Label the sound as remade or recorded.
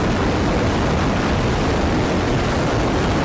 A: recorded